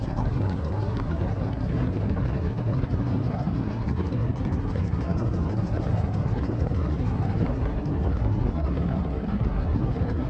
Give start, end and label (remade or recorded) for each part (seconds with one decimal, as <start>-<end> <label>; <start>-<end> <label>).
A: 0.0-10.3 remade